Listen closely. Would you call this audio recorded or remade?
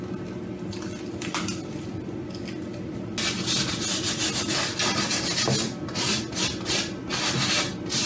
recorded